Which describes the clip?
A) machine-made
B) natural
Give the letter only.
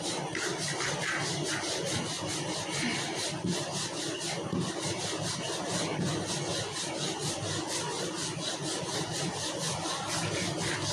B